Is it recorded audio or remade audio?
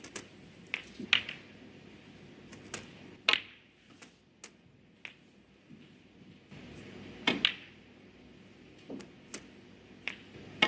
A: recorded